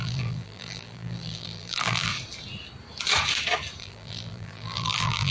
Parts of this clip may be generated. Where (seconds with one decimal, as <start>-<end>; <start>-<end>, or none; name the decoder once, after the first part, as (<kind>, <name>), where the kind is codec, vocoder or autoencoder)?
0.0-2.1 (vocoder, BigVGAN v2); 3.8-5.3